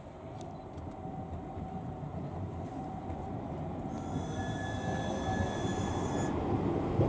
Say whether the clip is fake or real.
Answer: real